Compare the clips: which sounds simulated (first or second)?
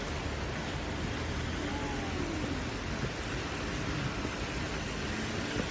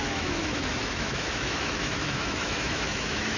second